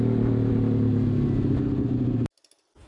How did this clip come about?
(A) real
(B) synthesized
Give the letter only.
A